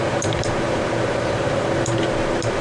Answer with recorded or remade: remade